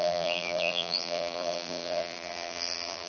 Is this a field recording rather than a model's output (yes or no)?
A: no